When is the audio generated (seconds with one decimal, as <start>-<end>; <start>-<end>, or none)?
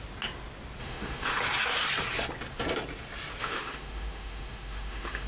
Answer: 0.8-1.4; 3.4-5.3